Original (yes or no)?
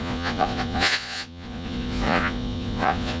no